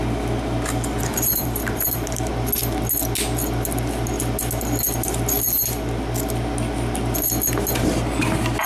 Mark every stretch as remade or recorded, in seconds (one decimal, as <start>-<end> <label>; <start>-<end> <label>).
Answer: 0.0-1.0 recorded; 1.0-2.3 remade; 2.3-8.7 recorded